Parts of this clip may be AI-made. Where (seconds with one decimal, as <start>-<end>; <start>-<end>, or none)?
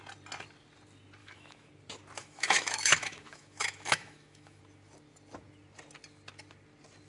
1.2-1.7; 2.2-4.6